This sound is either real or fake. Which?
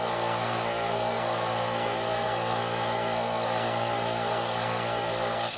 fake